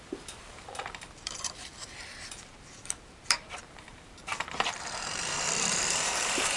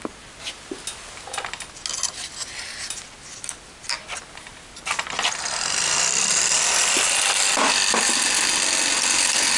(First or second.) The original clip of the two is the second